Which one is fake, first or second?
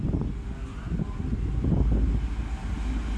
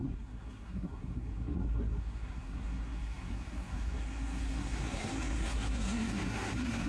second